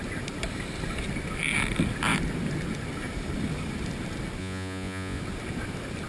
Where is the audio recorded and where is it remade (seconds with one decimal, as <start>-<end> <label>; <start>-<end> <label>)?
0.0-4.4 recorded; 4.4-5.2 remade; 5.2-6.1 recorded